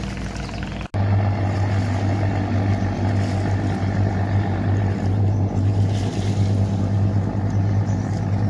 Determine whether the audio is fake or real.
real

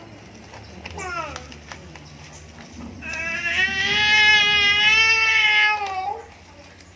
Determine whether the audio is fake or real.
real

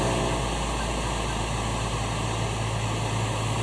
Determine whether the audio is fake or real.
real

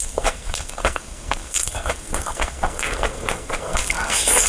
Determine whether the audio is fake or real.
fake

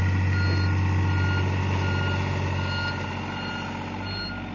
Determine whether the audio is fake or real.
real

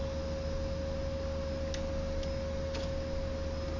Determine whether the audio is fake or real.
real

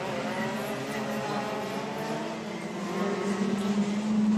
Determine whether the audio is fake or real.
real